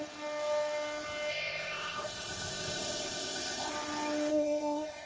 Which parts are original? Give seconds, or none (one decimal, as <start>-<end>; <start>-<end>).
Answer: 0.0-1.3; 3.7-4.3